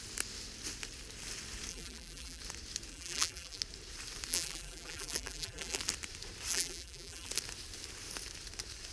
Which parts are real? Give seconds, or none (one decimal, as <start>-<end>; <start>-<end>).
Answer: 0.0-1.7; 2.4-2.9; 3.6-4.3; 5.8-6.5; 7.3-8.9